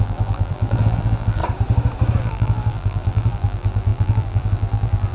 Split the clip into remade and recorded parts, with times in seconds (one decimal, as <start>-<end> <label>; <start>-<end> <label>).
0.0-1.4 remade; 1.4-2.2 recorded; 2.2-5.1 remade